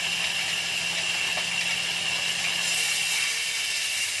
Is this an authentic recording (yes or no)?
yes